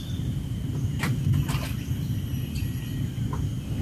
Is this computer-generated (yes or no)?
no